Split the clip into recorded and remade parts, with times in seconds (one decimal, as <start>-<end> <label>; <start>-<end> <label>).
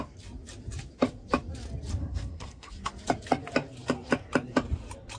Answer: 0.0-2.0 recorded; 2.0-2.7 remade; 2.7-5.2 recorded